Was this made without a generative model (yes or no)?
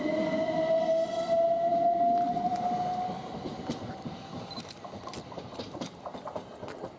yes